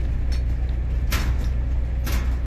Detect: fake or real real